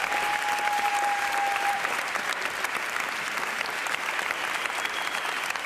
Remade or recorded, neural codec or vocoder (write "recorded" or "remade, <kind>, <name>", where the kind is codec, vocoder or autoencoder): recorded